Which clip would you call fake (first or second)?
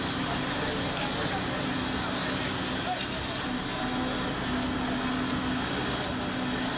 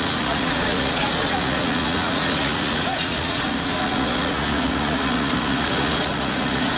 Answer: second